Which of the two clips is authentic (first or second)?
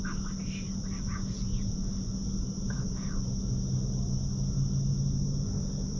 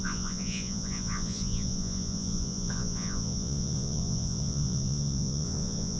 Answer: first